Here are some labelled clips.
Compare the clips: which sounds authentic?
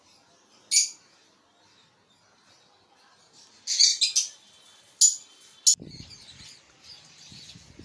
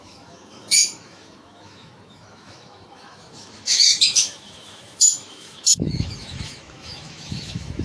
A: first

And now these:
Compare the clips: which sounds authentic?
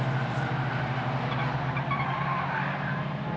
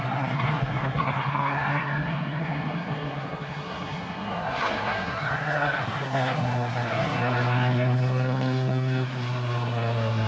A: first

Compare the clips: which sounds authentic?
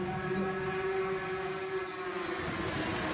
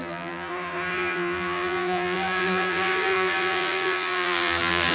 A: first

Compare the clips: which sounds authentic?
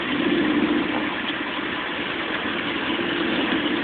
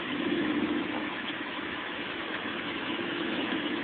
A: first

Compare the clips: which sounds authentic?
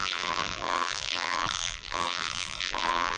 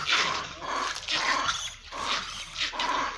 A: second